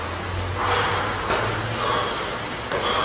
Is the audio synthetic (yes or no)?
no